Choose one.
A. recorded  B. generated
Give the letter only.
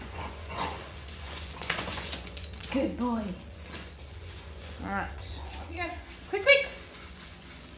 B